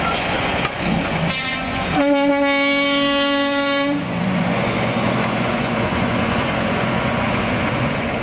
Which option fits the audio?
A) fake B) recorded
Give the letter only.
A